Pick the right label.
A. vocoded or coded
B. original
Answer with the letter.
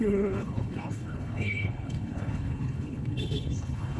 A